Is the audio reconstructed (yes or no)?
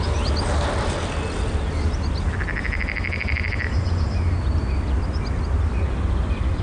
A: no